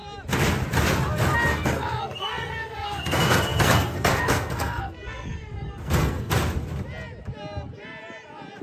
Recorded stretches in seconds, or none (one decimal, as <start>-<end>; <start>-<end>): 0.0-1.5; 6.3-8.6